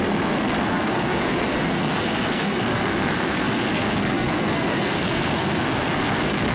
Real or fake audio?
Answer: fake